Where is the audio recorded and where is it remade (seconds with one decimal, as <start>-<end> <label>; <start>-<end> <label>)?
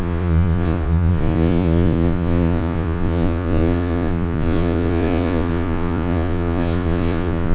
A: 0.0-7.5 remade